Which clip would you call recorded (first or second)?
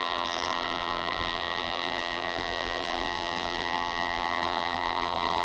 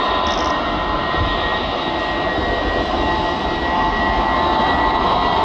second